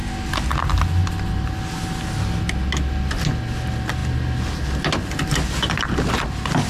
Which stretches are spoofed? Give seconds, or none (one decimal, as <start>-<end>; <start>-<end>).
none